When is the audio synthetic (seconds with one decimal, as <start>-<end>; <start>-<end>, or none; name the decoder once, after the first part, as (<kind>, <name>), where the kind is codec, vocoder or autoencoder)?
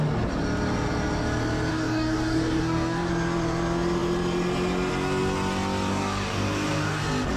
1.7-3.1 (codec, DAC); 5.9-7.0